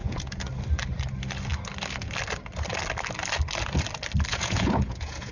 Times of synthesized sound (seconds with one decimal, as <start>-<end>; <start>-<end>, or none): 0.0-0.5; 4.3-5.3